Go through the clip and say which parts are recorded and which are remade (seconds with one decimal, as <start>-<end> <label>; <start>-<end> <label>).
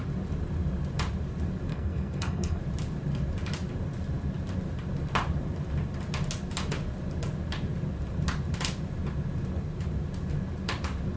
0.0-1.7 recorded; 1.7-2.6 remade; 2.6-11.2 recorded